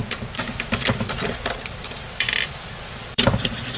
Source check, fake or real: fake